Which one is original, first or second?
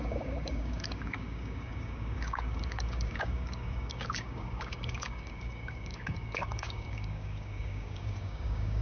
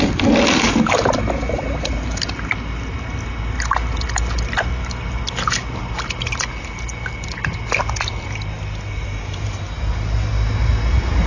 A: second